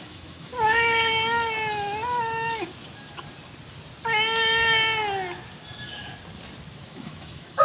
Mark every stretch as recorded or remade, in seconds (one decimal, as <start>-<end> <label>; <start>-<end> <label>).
0.0-0.5 remade; 0.5-2.2 recorded; 2.2-2.7 remade; 2.7-6.8 recorded; 6.8-7.6 remade